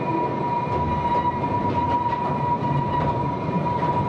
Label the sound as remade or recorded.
recorded